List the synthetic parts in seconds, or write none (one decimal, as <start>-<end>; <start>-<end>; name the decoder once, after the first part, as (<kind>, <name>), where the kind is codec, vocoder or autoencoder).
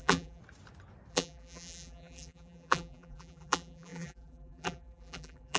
0.0-0.4 (vocoder, BigVGAN v2); 1.1-5.6